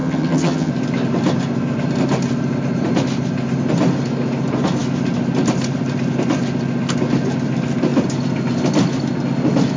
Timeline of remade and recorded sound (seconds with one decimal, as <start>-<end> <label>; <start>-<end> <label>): 0.0-0.7 remade; 0.7-9.8 recorded